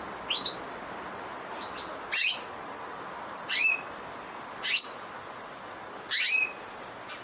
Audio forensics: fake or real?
real